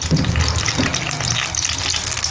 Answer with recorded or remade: recorded